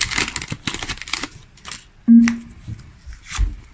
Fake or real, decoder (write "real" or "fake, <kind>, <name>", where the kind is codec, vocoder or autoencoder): real